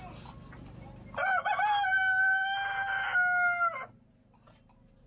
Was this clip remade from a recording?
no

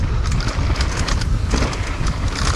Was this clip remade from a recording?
no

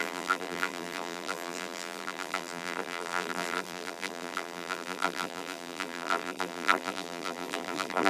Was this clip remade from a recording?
yes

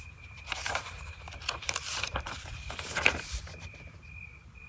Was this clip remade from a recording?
yes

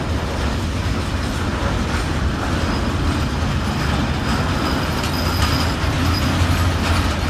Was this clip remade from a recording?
no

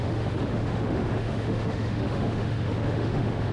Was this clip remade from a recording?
yes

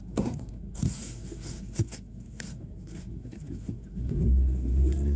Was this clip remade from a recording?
yes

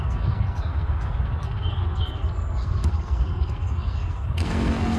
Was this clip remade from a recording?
yes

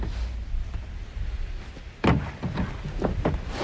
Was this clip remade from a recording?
no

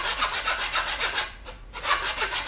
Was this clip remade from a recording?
no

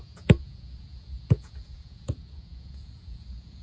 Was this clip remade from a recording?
yes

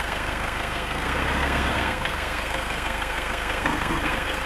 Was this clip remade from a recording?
yes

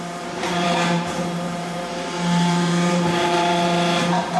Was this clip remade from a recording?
yes